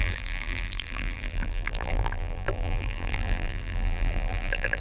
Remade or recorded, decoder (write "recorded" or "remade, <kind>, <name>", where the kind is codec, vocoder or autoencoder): remade, vocoder, BigVGAN v2